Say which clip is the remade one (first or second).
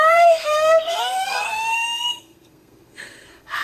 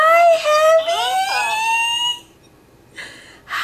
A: first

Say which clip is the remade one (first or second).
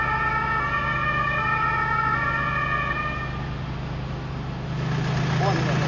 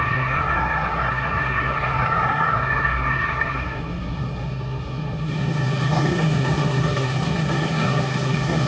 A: second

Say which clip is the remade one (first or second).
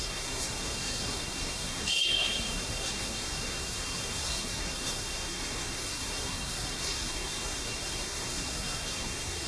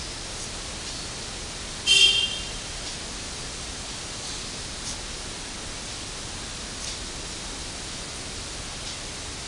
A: first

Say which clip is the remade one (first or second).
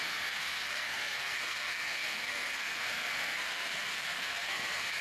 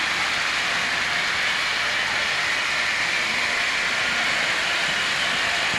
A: first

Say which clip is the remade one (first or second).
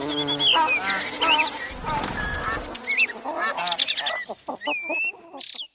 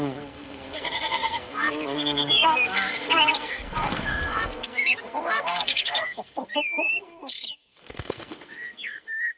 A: second